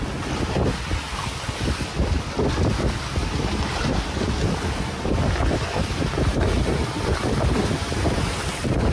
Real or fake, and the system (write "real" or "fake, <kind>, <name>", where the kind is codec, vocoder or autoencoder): real